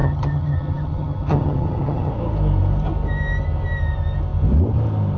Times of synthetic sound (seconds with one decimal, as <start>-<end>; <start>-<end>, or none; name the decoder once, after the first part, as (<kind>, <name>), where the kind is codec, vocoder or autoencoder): 0.0-2.1 (vocoder, HiFi-GAN)